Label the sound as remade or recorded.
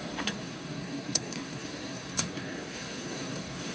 remade